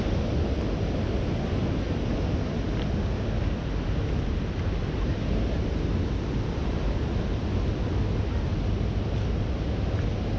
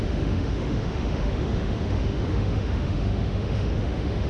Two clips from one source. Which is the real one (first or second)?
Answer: first